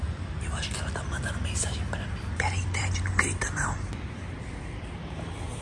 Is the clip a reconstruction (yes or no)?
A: yes